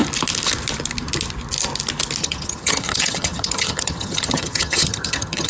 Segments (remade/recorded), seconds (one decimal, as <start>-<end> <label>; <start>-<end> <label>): 0.0-2.2 recorded; 2.2-5.5 remade